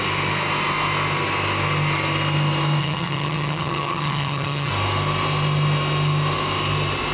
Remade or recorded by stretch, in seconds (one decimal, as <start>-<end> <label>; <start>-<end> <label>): 0.0-2.8 recorded; 2.8-4.7 remade; 4.7-7.1 recorded